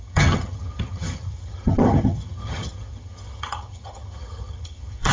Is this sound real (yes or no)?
no